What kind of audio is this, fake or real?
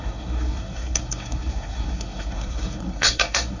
fake